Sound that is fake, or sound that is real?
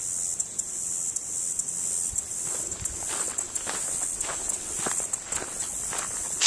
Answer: real